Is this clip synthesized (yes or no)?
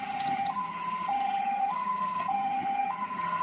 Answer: yes